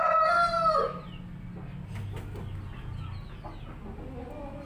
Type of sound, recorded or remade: recorded